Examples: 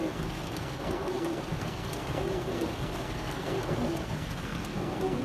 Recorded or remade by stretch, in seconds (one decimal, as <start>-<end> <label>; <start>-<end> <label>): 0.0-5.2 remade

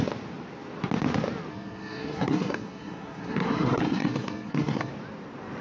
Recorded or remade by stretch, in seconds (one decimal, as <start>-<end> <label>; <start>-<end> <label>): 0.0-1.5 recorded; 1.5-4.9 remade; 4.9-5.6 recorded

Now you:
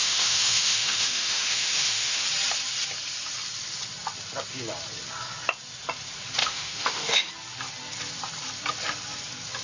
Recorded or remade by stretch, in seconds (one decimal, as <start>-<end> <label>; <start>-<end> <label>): 0.0-2.2 remade; 2.2-6.4 recorded; 6.4-7.3 remade; 7.3-9.6 recorded